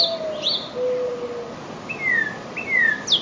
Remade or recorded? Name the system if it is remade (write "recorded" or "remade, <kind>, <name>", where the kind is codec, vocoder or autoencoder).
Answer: recorded